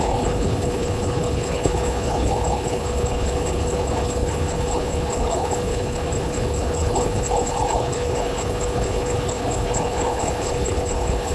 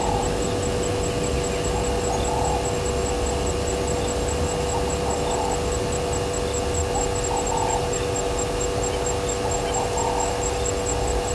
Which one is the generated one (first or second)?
first